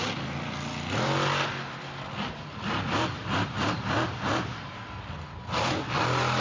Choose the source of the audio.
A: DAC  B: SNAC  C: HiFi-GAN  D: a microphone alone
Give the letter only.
D